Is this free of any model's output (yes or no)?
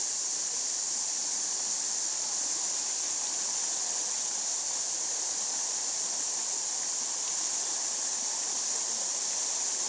yes